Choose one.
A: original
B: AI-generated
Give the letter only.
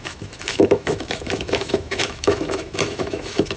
B